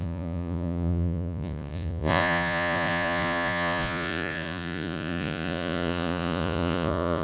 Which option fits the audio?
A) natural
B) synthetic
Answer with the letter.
B